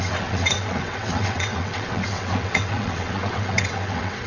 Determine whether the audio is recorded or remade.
remade